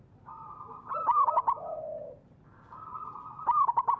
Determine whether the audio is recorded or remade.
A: recorded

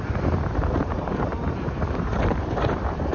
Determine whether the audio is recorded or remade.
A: remade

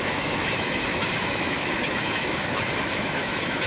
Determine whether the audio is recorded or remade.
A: remade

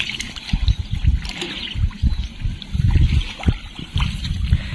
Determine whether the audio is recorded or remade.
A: recorded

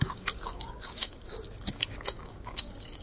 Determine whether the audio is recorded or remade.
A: remade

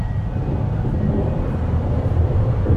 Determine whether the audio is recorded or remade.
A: remade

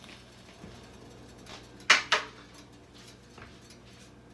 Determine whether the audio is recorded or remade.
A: recorded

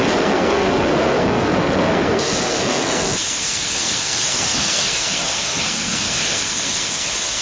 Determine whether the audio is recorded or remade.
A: remade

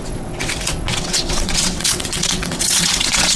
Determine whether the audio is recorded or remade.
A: remade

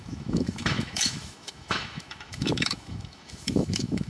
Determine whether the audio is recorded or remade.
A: remade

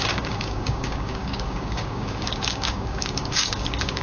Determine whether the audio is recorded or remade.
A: remade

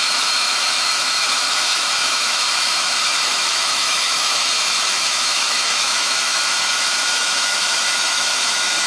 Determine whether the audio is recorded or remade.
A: remade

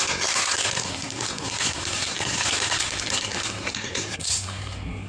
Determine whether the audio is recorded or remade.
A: remade